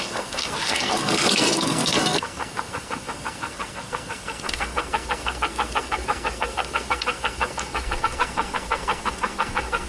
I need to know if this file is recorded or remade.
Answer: remade